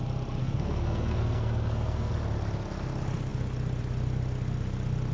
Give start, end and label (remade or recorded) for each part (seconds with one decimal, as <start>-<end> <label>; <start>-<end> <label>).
0.0-0.4 recorded; 0.4-2.1 remade; 2.1-5.1 recorded

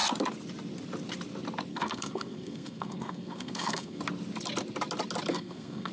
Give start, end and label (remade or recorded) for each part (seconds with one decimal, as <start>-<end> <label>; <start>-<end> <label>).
0.0-1.7 recorded; 1.7-4.0 remade; 4.0-5.3 recorded; 5.3-5.9 remade

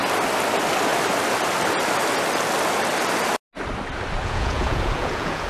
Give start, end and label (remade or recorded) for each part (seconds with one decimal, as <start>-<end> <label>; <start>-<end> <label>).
0.0-4.2 recorded; 4.2-5.5 remade

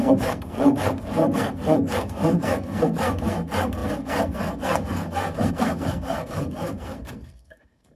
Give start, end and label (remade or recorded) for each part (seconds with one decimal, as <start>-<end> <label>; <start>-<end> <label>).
0.0-8.0 remade

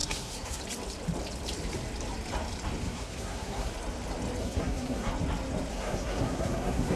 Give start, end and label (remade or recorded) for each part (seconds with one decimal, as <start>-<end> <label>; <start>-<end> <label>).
0.0-0.6 remade; 0.6-2.8 recorded; 2.8-3.7 remade; 3.7-4.4 recorded; 4.4-5.1 remade; 5.1-5.7 recorded; 5.7-7.0 remade